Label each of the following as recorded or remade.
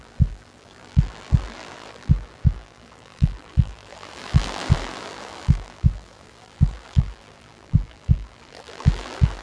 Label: remade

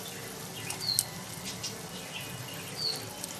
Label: recorded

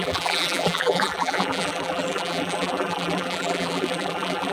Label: remade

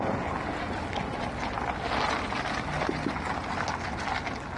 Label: recorded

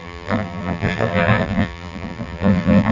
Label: remade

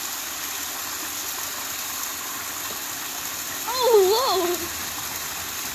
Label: recorded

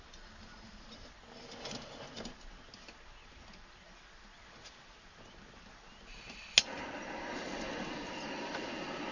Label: recorded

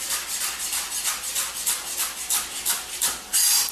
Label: remade